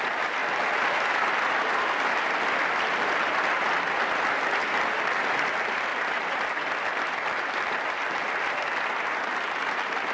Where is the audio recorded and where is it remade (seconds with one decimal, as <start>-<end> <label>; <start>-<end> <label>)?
0.0-10.1 recorded